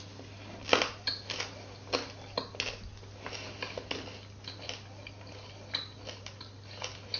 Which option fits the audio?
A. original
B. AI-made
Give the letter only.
A